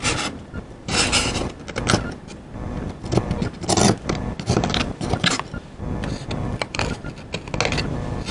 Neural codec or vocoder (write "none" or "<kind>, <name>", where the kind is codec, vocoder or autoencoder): none